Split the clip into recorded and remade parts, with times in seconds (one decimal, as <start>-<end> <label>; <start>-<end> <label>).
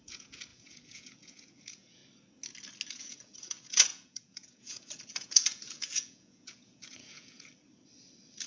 0.0-2.0 remade; 2.0-2.9 recorded; 2.9-7.5 remade; 7.5-8.5 recorded